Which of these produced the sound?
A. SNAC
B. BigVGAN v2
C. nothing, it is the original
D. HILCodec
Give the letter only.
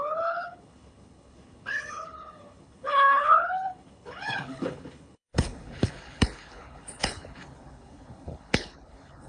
D